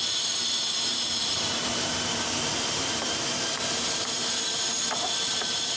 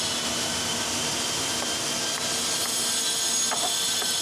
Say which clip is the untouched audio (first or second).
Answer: second